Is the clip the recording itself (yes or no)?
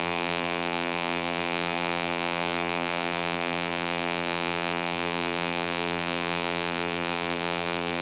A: no